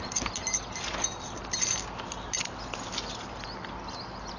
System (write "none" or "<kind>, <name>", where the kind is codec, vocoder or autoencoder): none